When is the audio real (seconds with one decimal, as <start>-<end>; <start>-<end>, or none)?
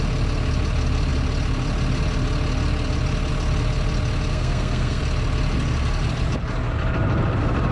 0.0-4.3; 5.0-7.7